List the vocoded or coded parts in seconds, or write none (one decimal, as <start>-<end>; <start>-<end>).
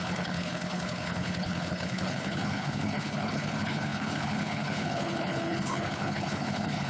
0.0-6.9